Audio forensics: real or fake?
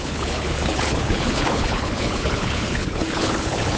fake